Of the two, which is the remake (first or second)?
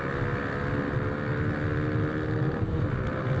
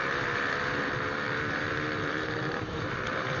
second